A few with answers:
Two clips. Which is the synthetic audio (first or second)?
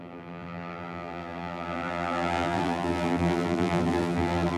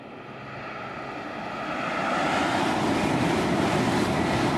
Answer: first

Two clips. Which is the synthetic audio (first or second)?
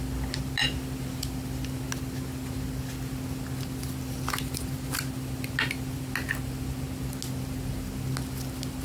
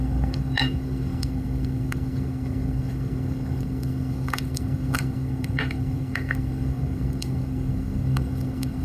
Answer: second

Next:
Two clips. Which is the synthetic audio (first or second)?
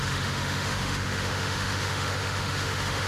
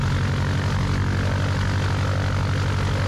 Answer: first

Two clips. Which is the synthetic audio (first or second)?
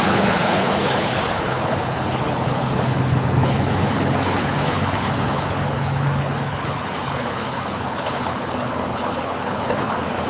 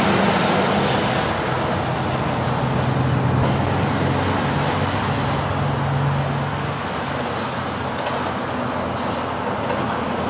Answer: first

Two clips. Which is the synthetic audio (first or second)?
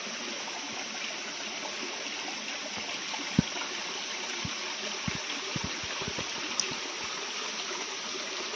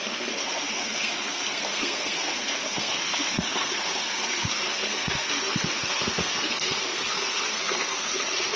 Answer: second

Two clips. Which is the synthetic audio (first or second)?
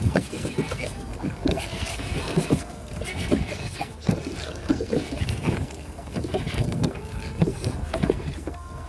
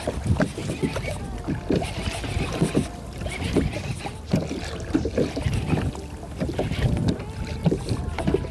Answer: first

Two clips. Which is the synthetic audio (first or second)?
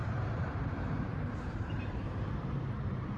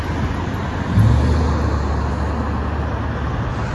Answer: first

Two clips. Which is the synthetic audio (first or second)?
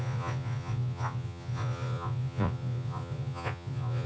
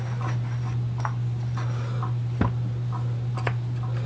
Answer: first